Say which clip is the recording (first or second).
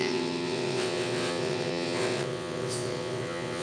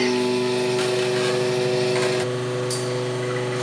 second